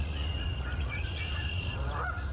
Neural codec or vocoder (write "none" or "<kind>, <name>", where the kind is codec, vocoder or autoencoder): vocoder, Vocos